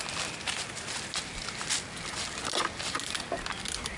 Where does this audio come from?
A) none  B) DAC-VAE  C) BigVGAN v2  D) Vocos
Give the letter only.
A